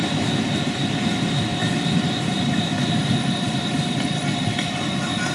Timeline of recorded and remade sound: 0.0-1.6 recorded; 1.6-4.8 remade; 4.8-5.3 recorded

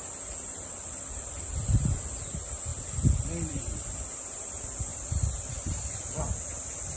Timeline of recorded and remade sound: 0.0-0.5 recorded; 0.5-2.1 remade; 2.1-2.7 recorded; 2.7-4.0 remade; 4.0-4.9 recorded; 4.9-6.2 remade; 6.2-7.0 recorded

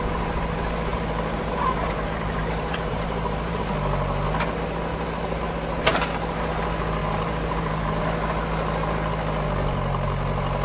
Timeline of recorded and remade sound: 0.0-0.9 recorded; 0.9-3.6 remade; 3.6-4.9 recorded; 4.9-5.4 remade; 5.4-7.0 recorded; 7.0-8.0 remade; 8.0-10.6 recorded

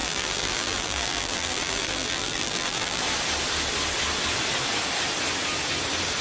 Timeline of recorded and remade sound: 0.0-3.0 remade; 3.0-6.2 recorded

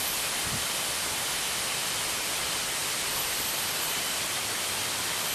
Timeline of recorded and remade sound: 0.0-1.8 recorded; 1.8-2.3 remade; 2.3-2.8 recorded; 2.8-5.3 remade

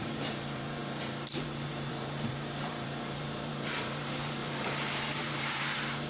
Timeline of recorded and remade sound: 0.0-6.1 remade